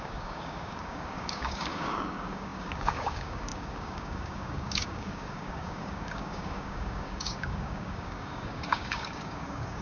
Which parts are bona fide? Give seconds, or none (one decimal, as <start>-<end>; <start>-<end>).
none